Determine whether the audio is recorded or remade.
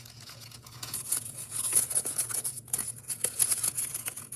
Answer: remade